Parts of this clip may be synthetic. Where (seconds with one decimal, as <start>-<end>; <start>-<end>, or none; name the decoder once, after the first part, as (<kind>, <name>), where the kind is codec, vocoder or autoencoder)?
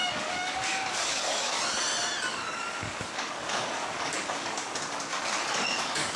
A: 0.0-1.6 (codec, DAC); 2.3-6.2